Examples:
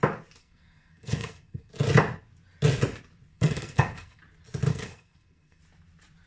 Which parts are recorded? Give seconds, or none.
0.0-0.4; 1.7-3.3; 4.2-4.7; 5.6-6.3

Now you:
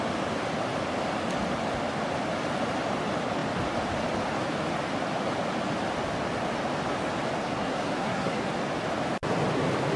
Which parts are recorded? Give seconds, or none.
0.0-7.4; 8.5-10.0